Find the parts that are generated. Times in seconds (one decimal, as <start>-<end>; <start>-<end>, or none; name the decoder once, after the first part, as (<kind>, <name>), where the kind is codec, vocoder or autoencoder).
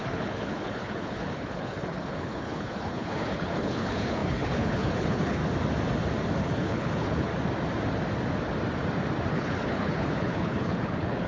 0.0-5.4 (codec, HILCodec); 6.4-7.3; 9.3-11.3